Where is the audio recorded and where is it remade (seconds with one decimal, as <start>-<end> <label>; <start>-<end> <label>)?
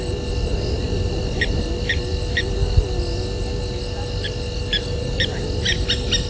0.0-6.3 recorded